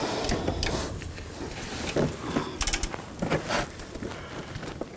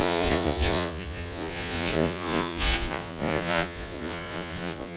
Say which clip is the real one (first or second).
first